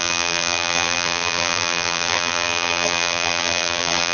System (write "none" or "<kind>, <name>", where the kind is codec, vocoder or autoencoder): vocoder, BigVGAN v2